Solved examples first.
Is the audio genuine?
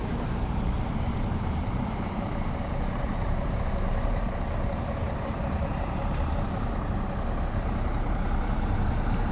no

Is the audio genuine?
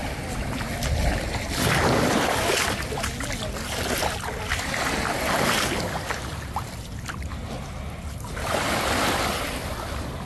yes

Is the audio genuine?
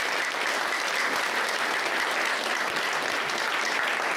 yes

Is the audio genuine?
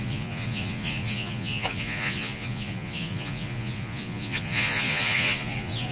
no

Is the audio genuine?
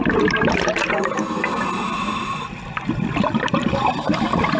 yes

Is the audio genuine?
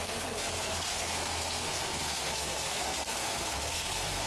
no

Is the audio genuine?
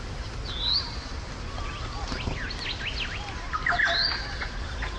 yes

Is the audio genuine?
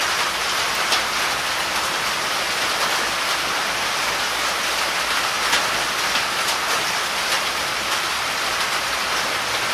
no